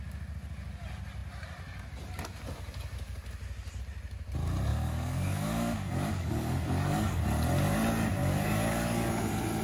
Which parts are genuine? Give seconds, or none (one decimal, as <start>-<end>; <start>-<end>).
0.0-4.7; 7.2-8.2; 9.2-9.6